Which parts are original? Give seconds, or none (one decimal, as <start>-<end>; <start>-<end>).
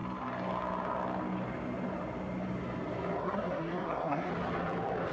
0.0-3.2; 4.3-5.1